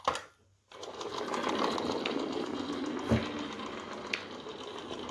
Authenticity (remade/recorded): recorded